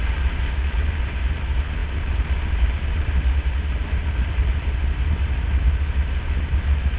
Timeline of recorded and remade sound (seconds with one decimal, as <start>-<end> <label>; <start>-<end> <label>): 0.0-7.0 recorded